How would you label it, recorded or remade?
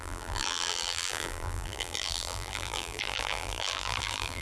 remade